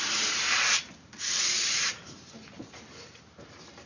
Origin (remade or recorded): remade